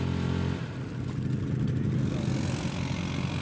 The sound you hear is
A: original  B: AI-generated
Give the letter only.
A